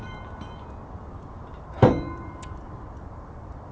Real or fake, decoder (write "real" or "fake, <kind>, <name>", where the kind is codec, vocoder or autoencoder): fake, vocoder, BigVGAN v2